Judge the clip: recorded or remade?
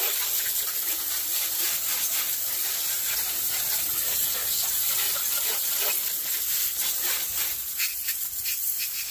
recorded